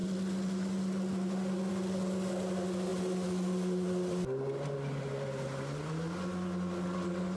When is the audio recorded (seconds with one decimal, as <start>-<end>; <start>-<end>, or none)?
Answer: 0.0-7.4